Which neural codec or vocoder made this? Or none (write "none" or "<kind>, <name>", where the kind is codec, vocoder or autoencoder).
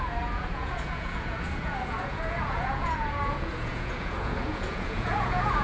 vocoder, Vocos